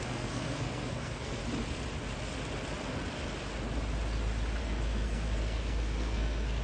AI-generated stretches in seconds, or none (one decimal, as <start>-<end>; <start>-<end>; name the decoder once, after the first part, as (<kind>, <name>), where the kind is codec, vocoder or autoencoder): 0.0-1.4 (codec, SNAC); 4.6-6.6